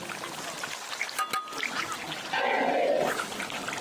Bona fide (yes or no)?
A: yes